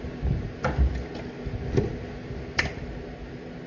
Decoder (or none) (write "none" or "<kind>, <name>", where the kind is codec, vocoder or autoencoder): none